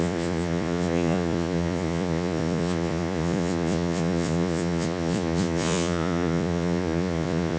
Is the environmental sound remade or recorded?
remade